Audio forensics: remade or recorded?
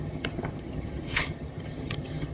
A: remade